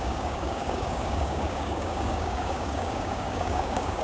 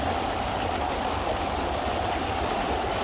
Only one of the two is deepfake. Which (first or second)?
first